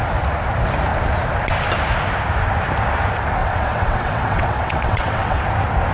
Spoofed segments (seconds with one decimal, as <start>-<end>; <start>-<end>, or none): 3.4-5.4